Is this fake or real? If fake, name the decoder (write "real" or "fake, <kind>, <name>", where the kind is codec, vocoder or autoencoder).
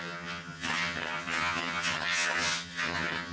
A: fake, vocoder, HiFi-GAN